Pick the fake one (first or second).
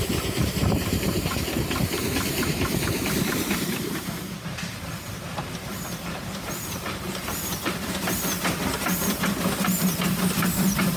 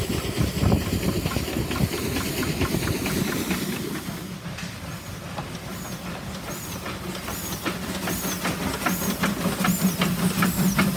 first